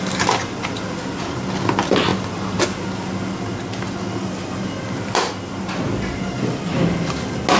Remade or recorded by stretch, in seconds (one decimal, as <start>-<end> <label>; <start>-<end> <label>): 0.0-7.6 recorded